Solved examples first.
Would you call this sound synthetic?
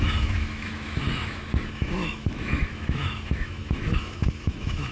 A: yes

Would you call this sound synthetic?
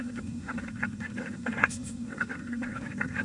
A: yes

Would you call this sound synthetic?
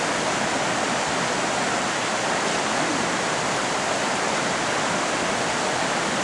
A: no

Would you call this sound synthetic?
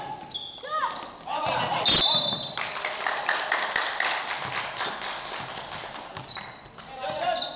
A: no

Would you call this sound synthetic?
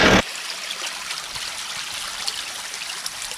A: no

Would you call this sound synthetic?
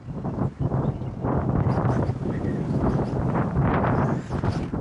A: no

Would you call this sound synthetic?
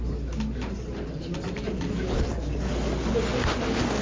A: no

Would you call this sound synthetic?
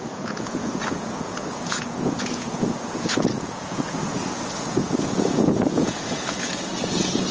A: yes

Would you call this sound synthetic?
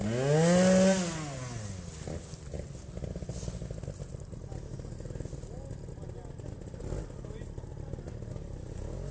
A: no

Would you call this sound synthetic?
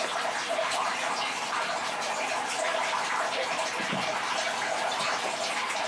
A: no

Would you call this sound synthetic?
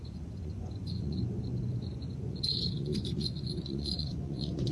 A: yes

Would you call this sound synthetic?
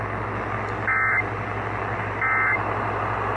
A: no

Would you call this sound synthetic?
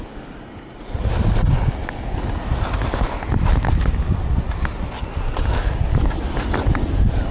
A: no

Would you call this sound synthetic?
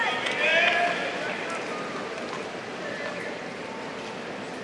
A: no